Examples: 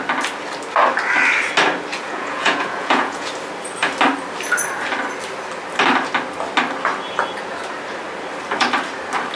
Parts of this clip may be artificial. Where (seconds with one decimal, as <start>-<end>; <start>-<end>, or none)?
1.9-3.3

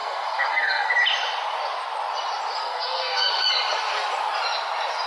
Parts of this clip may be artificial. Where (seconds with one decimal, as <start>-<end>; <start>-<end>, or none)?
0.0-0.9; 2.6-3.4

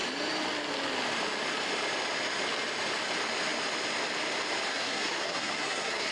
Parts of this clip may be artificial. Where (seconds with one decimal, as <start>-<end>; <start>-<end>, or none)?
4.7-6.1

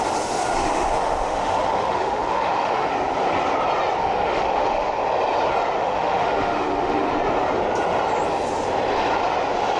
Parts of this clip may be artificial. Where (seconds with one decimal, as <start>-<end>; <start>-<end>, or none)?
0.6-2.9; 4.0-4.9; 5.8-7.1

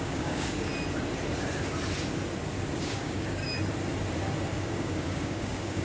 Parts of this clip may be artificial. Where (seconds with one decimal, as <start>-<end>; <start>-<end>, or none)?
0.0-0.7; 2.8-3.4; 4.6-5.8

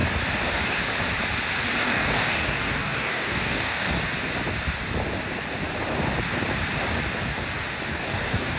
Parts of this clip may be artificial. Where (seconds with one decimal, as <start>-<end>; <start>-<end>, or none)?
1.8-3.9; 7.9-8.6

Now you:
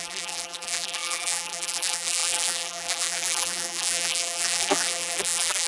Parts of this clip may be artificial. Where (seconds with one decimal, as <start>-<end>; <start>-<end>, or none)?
0.0-5.7